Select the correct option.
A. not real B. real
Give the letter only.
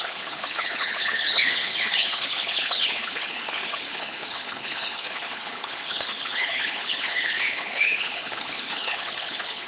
A